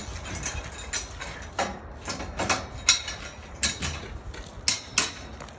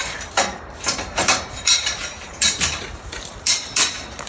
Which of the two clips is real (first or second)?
first